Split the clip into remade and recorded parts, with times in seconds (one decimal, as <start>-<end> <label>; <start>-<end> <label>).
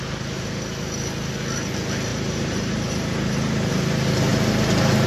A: 0.0-2.1 recorded; 2.1-3.7 remade; 3.7-5.1 recorded